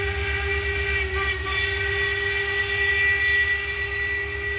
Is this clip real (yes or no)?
yes